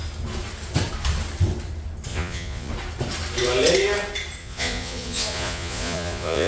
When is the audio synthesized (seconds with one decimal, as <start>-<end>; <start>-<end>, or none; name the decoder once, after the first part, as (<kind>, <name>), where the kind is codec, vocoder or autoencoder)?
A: 2.1-2.7 (vocoder, Vocos); 4.4-6.5